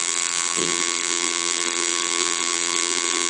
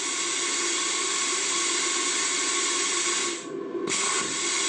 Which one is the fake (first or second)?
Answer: first